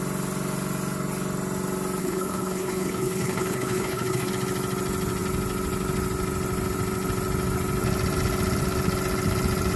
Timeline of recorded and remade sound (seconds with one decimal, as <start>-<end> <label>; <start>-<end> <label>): 0.0-2.0 recorded; 2.0-4.3 remade; 4.3-9.8 recorded